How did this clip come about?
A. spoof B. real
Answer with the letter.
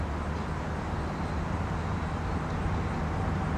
B